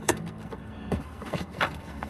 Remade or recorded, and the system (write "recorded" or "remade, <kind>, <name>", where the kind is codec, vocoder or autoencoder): remade, codec, SNAC